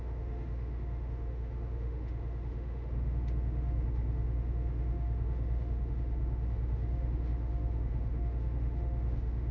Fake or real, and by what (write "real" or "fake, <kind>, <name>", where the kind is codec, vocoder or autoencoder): fake, autoencoder, DAC-VAE